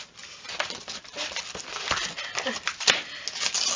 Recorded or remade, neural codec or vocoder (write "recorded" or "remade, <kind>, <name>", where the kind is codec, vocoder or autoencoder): recorded